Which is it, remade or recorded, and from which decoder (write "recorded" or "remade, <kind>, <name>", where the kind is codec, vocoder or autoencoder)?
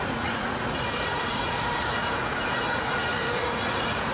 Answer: remade, vocoder, Vocos